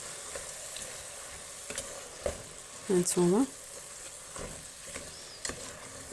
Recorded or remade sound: recorded